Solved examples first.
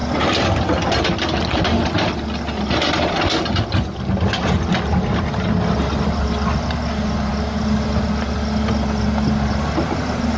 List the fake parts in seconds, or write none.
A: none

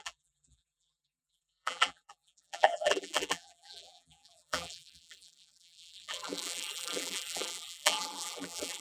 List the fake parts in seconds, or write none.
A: 0.0-8.8 (vocoder, BigVGAN v2)